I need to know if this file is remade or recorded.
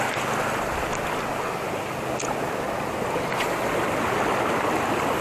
recorded